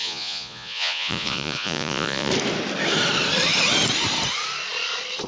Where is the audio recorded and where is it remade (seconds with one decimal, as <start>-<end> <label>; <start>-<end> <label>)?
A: 0.0-2.3 remade; 2.3-5.3 recorded